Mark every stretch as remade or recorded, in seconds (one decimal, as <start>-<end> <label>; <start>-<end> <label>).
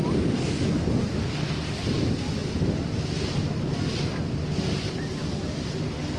0.0-6.2 recorded